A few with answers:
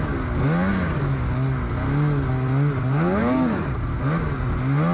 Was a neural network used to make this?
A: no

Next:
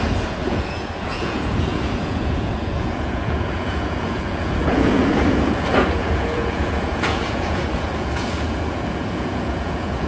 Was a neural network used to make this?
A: yes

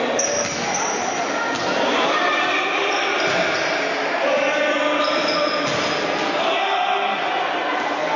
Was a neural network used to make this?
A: no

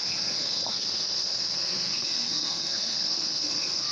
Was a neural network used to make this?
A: yes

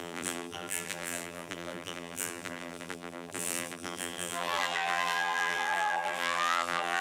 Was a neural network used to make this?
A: yes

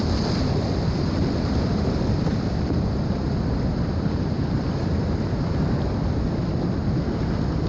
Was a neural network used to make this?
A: yes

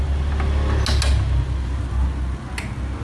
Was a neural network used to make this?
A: no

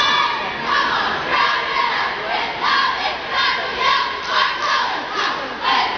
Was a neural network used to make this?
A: no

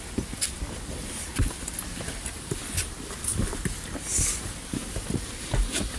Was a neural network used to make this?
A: no